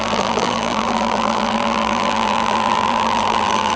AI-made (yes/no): yes